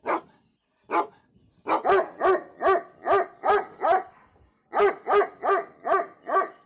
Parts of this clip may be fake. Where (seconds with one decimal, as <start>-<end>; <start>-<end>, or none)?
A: none